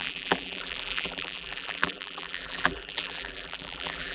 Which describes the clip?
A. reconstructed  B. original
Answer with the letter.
A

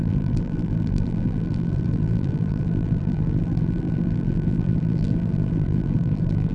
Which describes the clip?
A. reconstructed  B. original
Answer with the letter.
A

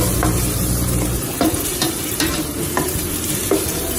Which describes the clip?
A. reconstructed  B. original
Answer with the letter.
A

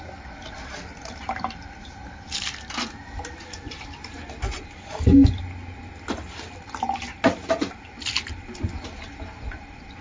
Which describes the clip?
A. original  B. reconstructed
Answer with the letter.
A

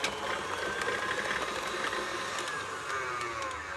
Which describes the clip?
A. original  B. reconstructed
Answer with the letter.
A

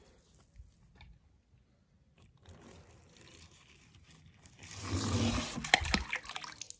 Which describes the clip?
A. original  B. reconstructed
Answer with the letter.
A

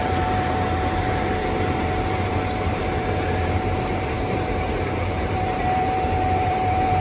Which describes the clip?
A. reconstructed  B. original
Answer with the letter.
A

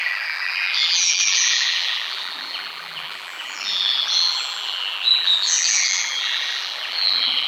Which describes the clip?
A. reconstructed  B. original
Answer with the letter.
A